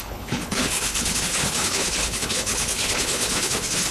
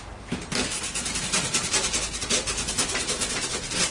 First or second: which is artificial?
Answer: first